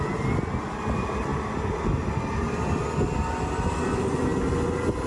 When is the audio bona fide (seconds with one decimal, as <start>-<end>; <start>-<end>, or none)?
0.0-5.1